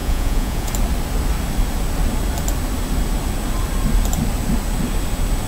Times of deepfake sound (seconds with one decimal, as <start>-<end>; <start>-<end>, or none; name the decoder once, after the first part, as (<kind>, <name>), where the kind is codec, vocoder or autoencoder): 0.0-0.7 (vocoder, Vocos)